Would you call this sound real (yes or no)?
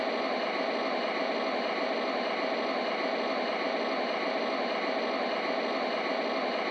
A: yes